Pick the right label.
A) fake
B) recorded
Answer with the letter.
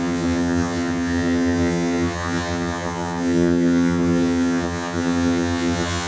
A